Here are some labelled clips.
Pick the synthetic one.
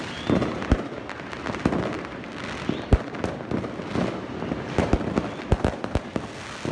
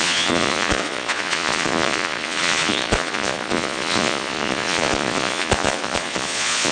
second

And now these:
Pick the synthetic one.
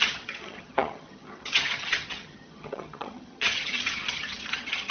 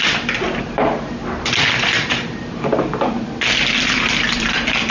first